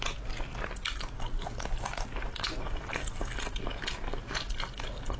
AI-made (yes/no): no